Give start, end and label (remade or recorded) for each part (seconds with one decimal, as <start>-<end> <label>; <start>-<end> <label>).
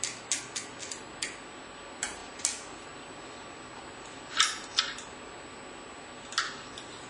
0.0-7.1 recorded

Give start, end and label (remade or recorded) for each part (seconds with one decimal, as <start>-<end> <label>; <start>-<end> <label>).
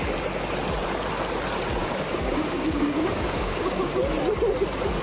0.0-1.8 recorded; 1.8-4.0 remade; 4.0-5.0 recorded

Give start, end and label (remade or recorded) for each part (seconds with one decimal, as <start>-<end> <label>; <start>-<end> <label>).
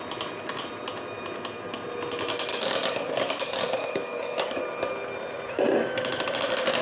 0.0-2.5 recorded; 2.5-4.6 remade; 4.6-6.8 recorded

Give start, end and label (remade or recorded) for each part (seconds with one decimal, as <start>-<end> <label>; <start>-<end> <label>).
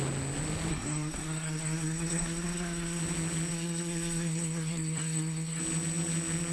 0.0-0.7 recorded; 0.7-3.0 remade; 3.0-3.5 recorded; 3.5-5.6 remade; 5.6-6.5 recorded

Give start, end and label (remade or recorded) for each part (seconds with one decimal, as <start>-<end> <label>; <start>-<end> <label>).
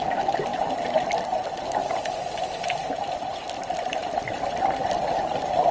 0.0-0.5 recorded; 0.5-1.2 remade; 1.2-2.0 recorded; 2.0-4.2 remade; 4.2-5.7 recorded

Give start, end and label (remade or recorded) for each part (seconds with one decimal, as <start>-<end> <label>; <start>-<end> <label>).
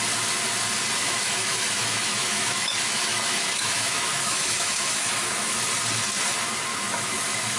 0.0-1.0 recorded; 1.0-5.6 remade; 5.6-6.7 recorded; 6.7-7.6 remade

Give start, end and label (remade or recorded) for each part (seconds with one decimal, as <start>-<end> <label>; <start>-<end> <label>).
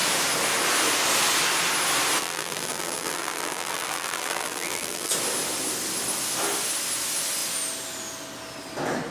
0.0-2.2 recorded; 2.2-5.1 remade; 5.1-9.1 recorded